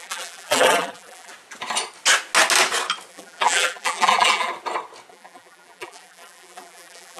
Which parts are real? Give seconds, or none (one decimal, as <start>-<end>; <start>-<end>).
1.3-3.1; 4.5-5.1